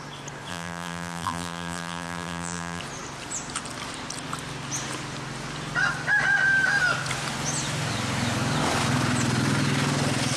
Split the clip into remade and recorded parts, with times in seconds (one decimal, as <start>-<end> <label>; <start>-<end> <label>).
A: 0.0-0.5 recorded; 0.5-2.8 remade; 2.8-10.4 recorded